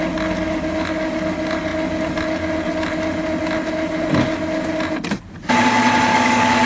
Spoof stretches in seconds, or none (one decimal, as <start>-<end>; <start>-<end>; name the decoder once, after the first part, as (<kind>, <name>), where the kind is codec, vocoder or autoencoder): 6.1-6.7 (codec, DAC)